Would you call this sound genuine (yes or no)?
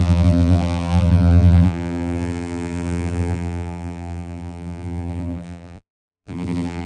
no